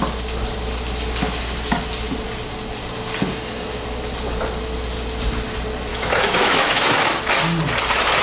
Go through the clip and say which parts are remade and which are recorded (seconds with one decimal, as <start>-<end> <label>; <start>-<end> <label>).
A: 0.0-5.9 recorded; 5.9-7.1 remade; 7.1-8.2 recorded